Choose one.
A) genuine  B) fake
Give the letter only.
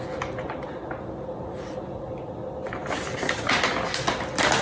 A